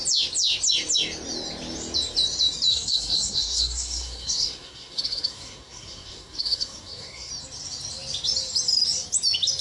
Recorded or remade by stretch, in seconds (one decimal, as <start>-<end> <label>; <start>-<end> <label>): 0.0-2.7 recorded; 2.7-7.3 remade; 7.3-9.6 recorded